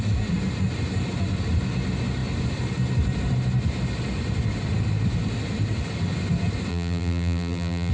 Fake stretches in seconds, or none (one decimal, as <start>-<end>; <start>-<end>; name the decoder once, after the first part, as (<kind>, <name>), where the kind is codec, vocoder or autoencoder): 6.7-7.9 (vocoder, BigVGAN v2)